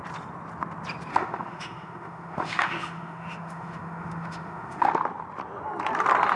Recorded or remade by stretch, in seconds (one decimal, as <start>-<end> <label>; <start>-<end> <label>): 0.0-1.1 recorded; 1.1-4.9 remade; 4.9-6.4 recorded